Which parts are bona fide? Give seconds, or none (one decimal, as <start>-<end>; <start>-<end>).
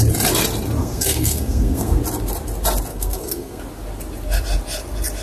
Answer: 0.0-0.8; 2.0-2.9; 3.6-5.2